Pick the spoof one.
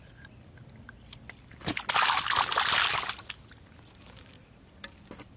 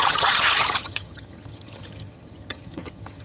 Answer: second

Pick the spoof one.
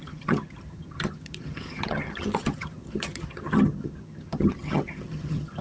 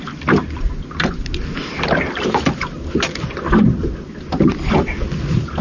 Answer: first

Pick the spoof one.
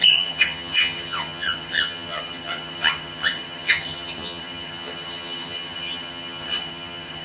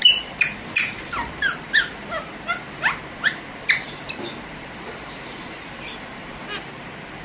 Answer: first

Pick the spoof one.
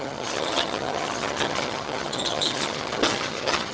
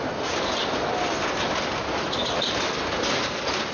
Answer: first